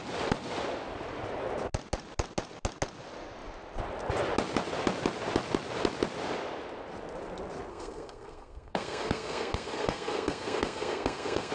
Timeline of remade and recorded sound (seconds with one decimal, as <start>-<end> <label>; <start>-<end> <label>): 0.0-7.7 recorded; 7.7-11.5 remade